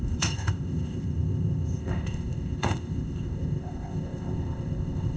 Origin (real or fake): fake